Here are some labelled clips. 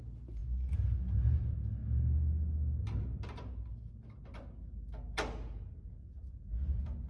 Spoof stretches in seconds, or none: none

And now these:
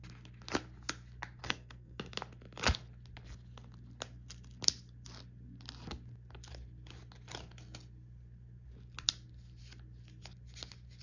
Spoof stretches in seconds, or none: 1.4-2.0 (codec, SNAC)

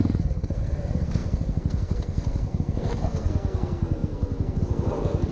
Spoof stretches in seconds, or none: 0.0-5.3 (codec, SNAC)

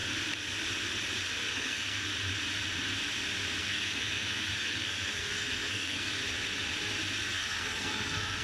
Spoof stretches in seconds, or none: 1.4-2.1 (codec, SNAC); 3.6-6.2; 7.3-8.4